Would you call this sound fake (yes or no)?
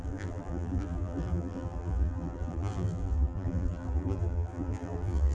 yes